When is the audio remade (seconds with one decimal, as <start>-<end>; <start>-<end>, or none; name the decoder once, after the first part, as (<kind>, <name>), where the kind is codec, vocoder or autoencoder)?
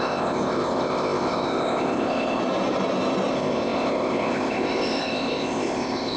0.0-2.4 (codec, ZipCodec); 3.3-6.2